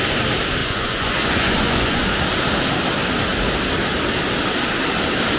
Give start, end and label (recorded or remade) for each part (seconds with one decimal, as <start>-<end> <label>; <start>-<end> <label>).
0.0-0.6 recorded; 0.6-2.0 remade; 2.0-5.4 recorded